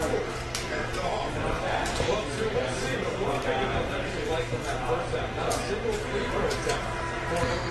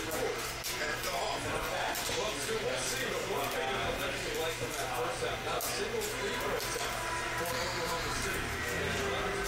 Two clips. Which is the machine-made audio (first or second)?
first